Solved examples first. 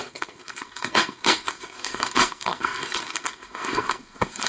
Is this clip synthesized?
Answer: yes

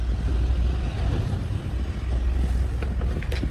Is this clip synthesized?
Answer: no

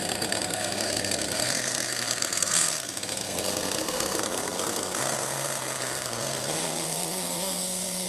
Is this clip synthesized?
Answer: yes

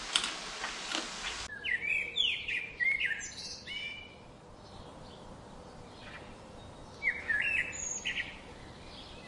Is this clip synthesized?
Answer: no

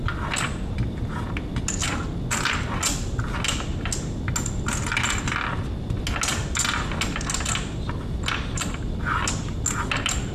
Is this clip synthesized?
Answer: no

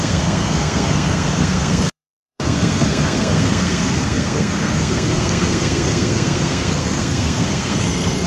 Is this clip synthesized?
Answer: yes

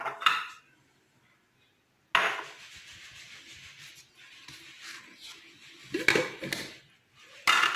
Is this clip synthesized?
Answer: no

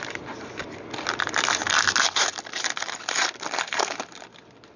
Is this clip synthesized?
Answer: no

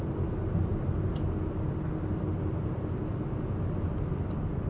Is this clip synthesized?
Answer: no